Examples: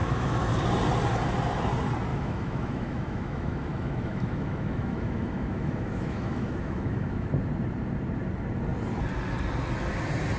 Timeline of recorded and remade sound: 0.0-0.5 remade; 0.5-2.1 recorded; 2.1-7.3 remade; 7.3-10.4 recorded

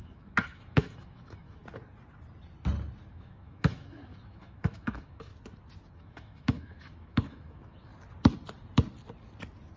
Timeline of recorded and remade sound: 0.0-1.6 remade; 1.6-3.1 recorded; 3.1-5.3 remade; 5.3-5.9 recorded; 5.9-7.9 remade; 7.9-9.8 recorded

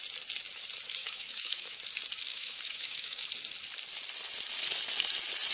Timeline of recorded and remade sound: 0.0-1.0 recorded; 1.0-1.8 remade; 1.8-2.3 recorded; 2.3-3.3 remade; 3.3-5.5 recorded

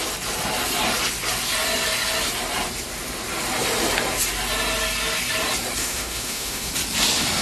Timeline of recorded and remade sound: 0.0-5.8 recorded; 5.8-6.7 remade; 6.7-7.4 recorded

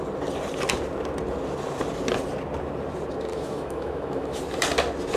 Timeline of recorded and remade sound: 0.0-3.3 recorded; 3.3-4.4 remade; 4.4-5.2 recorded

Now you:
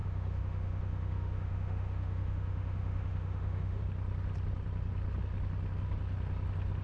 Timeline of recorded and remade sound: 0.0-3.8 remade; 3.8-6.8 recorded